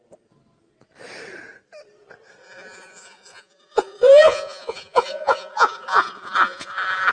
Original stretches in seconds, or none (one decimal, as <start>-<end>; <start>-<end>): 0.0-2.4

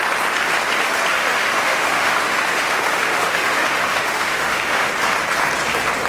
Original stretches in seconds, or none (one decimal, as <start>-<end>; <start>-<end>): 0.0-1.2; 4.9-6.1

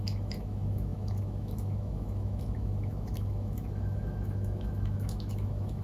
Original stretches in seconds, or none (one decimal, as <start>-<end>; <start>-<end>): none

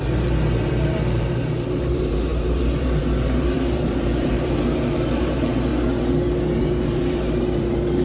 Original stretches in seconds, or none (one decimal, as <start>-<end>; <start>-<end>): 5.7-6.6